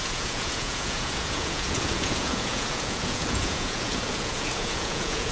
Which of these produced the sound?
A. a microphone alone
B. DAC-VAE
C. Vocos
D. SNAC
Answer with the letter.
C